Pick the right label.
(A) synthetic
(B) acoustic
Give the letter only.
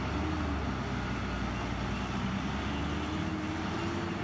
B